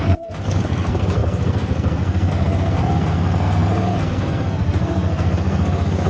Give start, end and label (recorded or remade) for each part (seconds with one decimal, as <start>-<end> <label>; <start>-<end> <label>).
0.0-6.1 remade